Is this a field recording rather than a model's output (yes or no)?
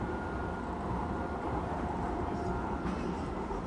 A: yes